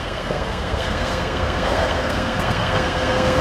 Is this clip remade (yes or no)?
yes